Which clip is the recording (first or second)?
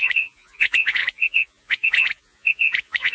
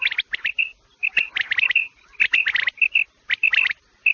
second